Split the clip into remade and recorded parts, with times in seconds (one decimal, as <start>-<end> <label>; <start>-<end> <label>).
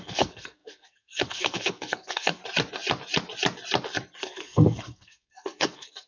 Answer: 0.0-2.4 remade; 2.4-4.2 recorded; 4.2-6.1 remade